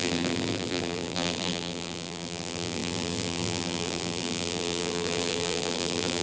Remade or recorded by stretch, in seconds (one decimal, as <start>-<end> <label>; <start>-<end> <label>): 0.0-6.2 remade